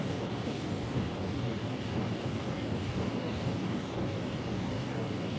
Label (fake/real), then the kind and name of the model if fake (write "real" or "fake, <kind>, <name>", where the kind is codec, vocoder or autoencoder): fake, codec, DAC